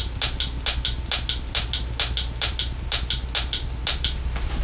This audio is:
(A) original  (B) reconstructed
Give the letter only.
A